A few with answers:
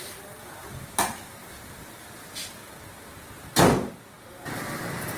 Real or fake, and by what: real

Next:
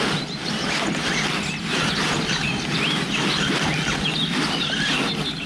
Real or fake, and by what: real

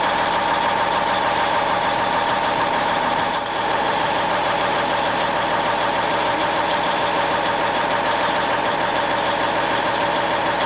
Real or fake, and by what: fake, vocoder, BigVGAN v2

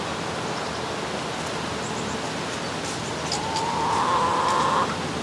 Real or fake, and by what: real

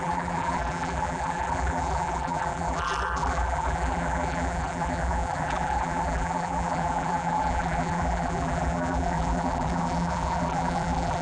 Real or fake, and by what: fake, vocoder, BigVGAN v2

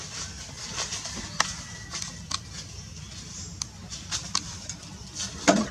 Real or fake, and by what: real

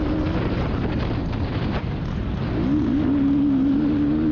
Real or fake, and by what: real